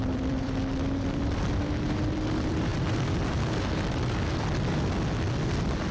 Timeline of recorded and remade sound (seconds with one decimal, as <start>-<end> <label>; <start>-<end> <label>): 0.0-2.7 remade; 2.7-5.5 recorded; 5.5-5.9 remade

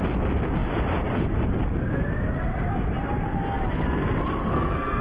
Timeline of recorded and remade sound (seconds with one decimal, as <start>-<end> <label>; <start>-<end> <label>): 0.0-4.4 recorded; 4.4-5.0 remade

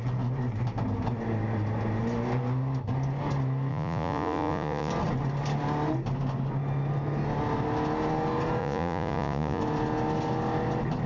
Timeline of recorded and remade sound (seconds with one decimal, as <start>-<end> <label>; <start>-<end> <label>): 0.0-3.7 recorded; 3.7-4.9 remade; 4.9-8.6 recorded; 8.6-9.6 remade; 9.6-11.1 recorded